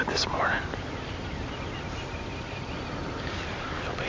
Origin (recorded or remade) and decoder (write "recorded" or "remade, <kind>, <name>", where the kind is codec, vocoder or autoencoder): recorded